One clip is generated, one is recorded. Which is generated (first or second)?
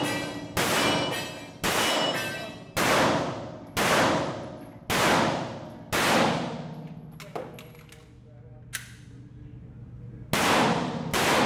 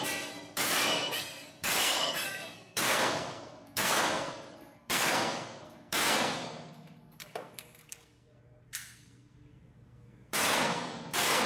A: second